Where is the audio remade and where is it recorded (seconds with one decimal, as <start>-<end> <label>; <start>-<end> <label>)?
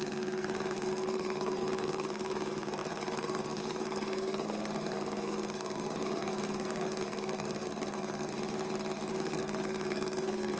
0.0-8.3 remade; 8.3-9.1 recorded; 9.1-10.6 remade